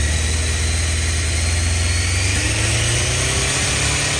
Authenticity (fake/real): real